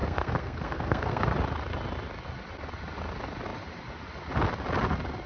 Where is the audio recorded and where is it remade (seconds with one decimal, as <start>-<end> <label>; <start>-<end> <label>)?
0.0-1.3 remade; 1.3-5.3 recorded